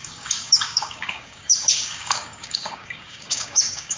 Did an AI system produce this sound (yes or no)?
yes